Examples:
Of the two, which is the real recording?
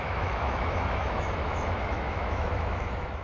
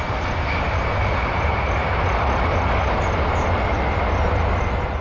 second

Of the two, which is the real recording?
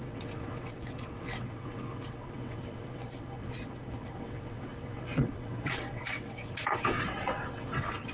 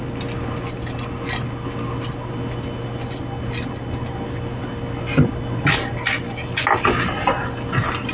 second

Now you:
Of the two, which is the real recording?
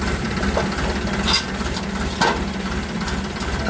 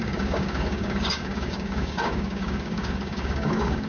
first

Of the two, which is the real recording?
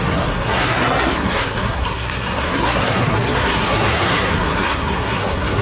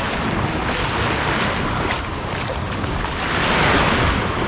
second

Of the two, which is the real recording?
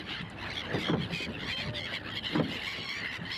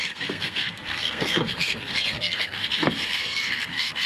first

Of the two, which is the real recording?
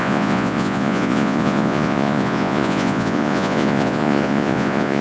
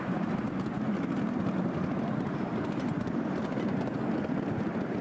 second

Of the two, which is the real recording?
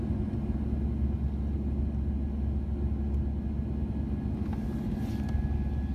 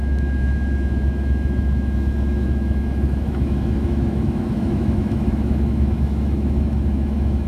first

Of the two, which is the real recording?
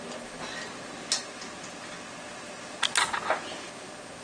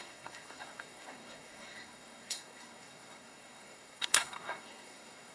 first